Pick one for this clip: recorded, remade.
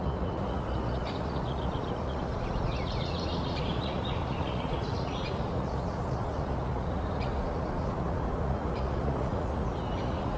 remade